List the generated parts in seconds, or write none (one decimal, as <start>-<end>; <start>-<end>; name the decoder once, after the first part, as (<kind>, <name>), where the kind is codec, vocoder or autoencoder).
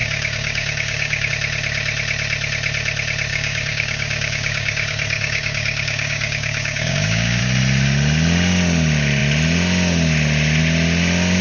0.0-1.3 (codec, DAC); 3.3-7.4